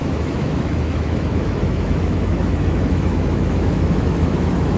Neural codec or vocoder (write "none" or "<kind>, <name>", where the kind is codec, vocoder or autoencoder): autoencoder, DAC-VAE